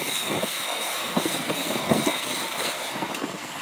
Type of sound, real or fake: fake